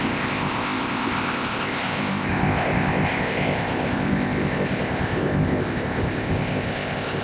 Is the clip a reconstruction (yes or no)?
yes